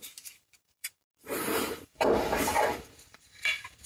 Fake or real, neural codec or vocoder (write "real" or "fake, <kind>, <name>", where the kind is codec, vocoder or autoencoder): fake, vocoder, BigVGAN v2